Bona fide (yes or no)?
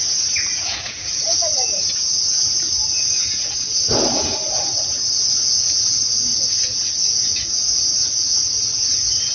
no